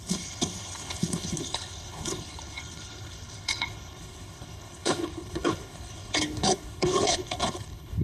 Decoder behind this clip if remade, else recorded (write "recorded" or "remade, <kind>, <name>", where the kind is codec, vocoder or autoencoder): remade, codec, HILCodec